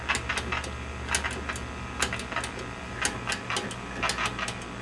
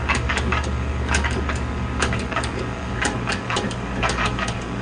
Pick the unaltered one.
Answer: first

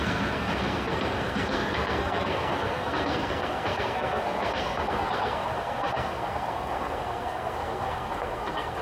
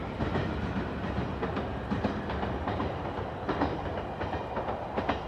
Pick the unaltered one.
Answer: second